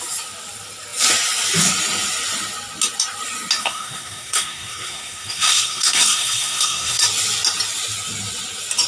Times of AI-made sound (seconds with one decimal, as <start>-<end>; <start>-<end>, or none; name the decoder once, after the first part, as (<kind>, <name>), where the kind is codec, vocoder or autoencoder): 3.6-7.0 (codec, SNAC)